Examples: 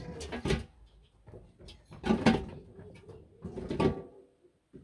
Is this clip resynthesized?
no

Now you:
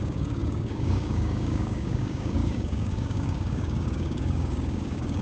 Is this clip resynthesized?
yes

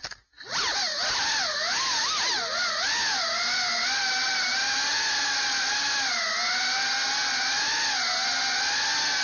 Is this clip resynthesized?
no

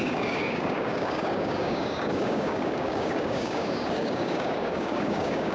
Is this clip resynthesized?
yes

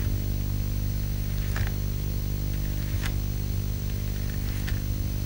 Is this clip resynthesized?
no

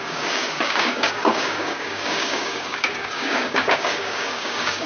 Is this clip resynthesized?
yes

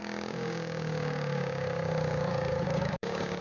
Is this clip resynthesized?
yes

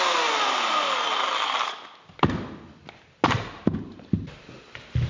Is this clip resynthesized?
no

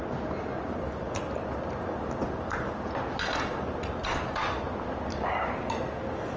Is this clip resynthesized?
no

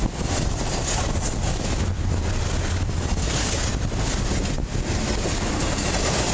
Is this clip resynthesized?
no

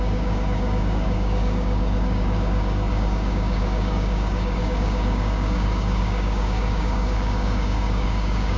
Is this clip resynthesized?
yes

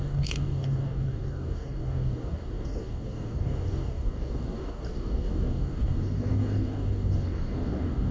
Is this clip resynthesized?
yes